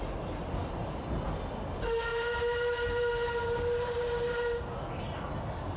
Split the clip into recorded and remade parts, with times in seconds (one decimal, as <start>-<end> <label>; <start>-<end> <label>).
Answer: 0.0-0.6 recorded; 0.6-1.3 remade; 1.3-2.1 recorded; 2.1-4.6 remade; 4.6-5.8 recorded